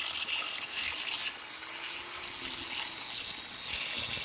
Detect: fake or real real